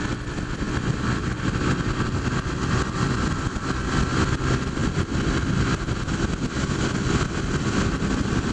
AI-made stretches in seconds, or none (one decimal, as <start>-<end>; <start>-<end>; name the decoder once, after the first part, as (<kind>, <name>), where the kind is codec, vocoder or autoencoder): none